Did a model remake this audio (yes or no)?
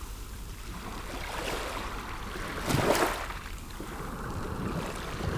no